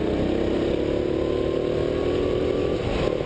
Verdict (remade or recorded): recorded